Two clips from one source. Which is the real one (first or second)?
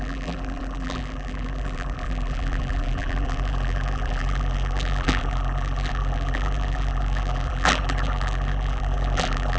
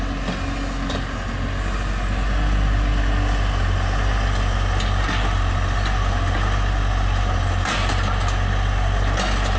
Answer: second